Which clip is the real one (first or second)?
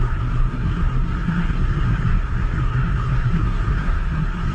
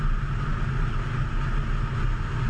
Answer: second